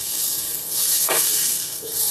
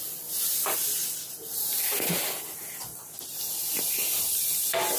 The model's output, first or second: first